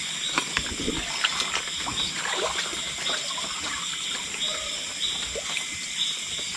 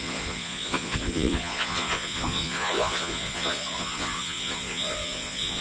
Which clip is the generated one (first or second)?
second